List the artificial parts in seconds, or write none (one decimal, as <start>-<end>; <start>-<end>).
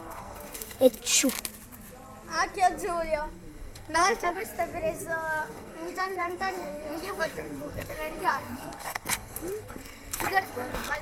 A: 0.0-1.0; 3.2-4.5; 5.4-11.0